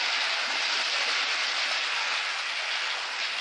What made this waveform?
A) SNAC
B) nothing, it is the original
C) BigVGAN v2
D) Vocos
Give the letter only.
B